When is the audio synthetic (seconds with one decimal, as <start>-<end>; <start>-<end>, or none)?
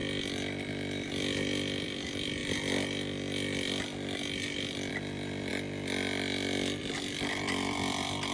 0.7-2.4; 4.9-5.5; 6.8-8.3